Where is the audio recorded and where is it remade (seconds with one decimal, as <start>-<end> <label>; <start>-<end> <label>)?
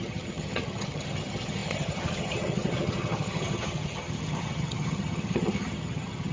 0.0-6.3 remade